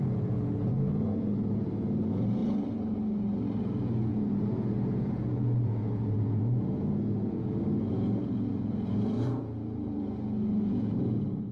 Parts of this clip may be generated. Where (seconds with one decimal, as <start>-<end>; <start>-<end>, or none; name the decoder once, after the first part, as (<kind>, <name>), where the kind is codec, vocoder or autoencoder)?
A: 0.0-2.4 (vocoder, Vocos); 3.6-11.5